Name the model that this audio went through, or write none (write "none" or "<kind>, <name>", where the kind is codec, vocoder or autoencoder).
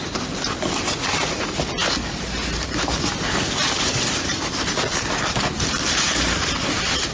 vocoder, BigVGAN v2